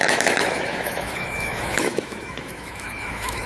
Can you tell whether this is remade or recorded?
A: remade